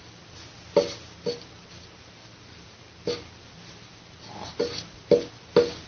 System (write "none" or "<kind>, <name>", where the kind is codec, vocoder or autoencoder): none